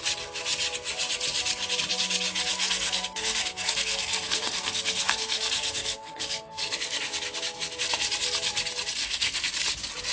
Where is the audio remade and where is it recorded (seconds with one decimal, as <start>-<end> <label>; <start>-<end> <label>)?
0.0-2.5 recorded; 2.5-7.0 remade; 7.0-9.0 recorded; 9.0-9.5 remade; 9.5-10.1 recorded